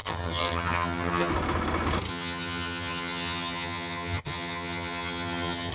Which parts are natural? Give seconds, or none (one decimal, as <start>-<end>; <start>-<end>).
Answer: 1.3-2.1